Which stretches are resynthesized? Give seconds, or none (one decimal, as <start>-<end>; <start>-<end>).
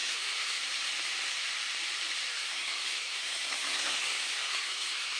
0.0-0.6; 2.3-5.2